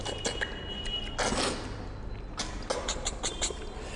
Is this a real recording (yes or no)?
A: yes